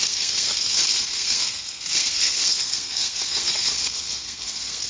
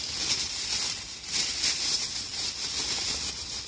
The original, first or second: second